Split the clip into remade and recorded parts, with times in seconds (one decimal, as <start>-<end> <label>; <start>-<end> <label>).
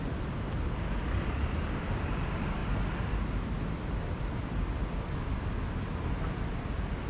0.0-7.1 recorded